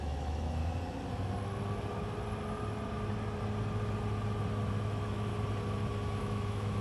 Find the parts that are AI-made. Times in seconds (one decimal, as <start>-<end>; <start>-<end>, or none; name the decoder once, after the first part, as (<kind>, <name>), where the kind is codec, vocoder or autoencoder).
0.0-0.6 (autoencoder, DAC-VAE); 4.7-5.3; 6.2-6.8